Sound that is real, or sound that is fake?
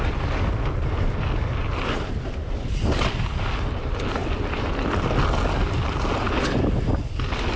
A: real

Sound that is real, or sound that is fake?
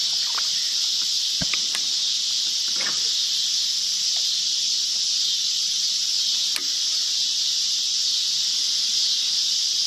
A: real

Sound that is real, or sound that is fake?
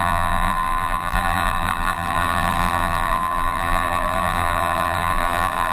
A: fake